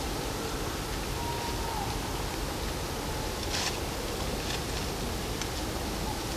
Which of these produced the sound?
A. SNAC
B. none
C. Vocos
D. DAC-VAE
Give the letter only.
B